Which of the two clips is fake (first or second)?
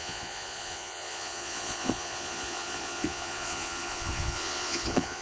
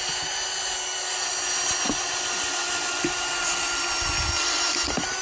first